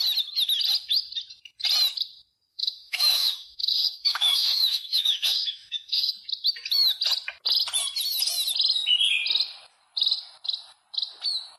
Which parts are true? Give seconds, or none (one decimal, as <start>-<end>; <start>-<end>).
0.0-2.5; 6.1-11.6